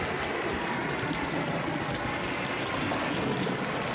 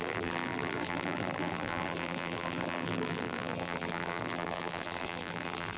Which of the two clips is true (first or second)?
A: first